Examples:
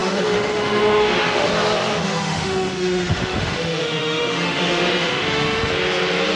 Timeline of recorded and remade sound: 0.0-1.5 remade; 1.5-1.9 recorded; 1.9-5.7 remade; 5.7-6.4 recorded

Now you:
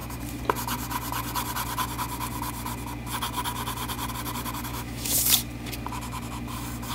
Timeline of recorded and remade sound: 0.0-4.7 recorded; 4.7-5.2 remade; 5.2-6.9 recorded

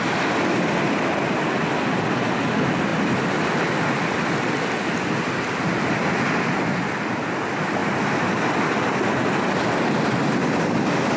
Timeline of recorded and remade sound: 0.0-11.2 recorded

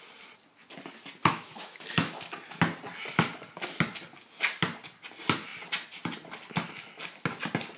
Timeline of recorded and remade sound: 0.0-1.2 recorded; 1.2-2.2 remade; 2.2-7.8 recorded

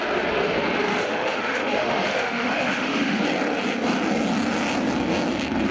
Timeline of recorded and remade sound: 0.0-0.9 recorded; 0.9-3.2 remade; 3.2-5.7 recorded